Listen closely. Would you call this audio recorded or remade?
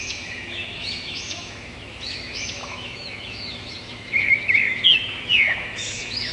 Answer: remade